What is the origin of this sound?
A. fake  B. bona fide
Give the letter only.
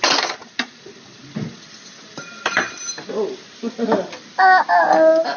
B